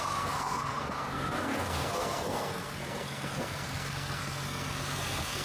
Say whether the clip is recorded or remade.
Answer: remade